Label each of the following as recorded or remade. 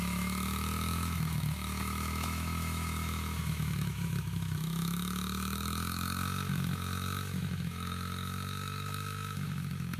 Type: remade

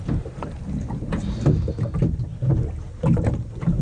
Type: recorded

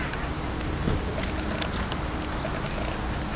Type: recorded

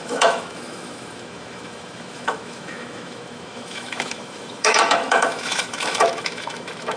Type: remade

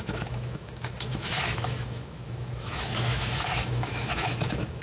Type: remade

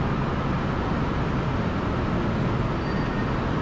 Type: recorded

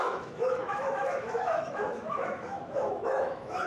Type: remade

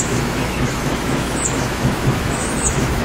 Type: remade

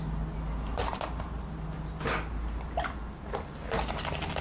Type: recorded